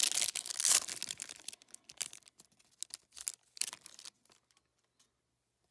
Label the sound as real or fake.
real